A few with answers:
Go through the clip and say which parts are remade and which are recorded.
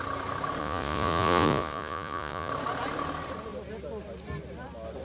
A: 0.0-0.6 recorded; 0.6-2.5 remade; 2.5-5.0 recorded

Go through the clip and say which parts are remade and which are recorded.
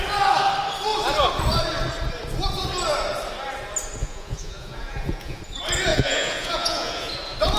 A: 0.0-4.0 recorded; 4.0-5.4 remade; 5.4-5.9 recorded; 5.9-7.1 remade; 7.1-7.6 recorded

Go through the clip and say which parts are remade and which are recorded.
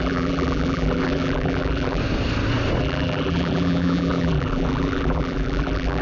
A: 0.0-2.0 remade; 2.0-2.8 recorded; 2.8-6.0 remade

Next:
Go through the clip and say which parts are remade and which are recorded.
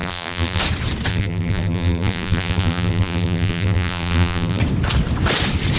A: 0.0-0.6 remade; 0.6-1.1 recorded; 1.1-4.6 remade; 4.6-5.8 recorded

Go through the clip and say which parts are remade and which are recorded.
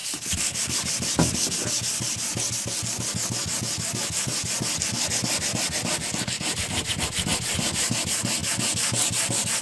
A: 0.0-9.6 recorded